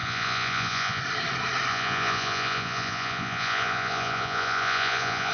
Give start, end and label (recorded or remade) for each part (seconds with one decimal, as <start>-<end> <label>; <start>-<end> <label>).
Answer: 0.0-1.0 remade; 1.0-1.7 recorded; 1.7-5.3 remade